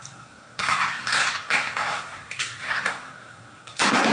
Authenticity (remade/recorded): remade